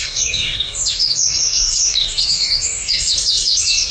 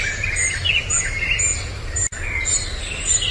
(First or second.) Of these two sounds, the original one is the second